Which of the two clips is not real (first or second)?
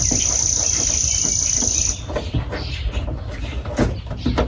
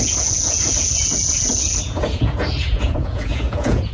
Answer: second